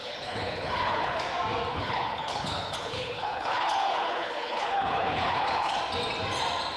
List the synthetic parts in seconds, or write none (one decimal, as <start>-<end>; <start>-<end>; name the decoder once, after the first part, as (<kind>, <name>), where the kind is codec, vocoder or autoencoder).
0.0-1.2 (codec, HILCodec); 1.7-5.8